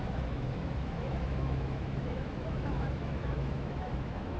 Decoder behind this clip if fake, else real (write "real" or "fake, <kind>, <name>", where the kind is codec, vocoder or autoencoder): fake, autoencoder, DAC-VAE